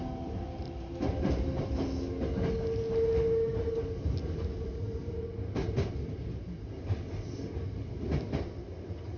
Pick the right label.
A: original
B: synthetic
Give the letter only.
A